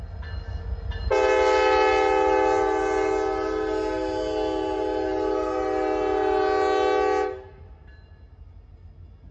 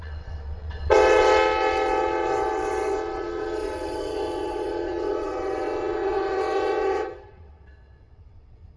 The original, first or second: first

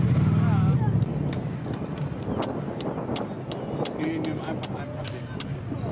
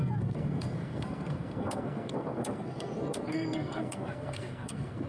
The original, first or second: first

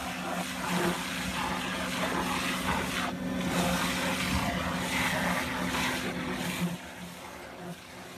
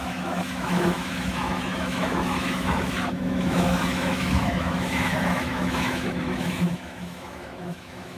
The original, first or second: first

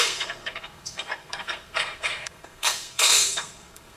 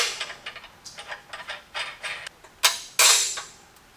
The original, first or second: second